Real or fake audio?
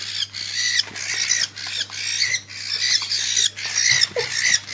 real